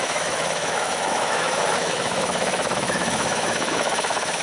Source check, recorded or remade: remade